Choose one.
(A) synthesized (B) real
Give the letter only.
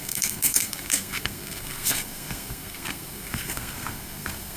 A